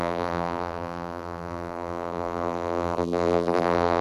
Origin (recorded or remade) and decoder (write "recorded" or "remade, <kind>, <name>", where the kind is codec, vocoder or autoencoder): remade, vocoder, BigVGAN v2